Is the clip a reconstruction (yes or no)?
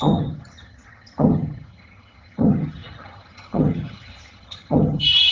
yes